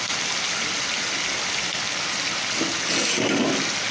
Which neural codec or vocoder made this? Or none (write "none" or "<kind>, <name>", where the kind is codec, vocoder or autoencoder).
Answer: none